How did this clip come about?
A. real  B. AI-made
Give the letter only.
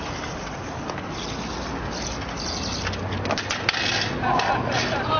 A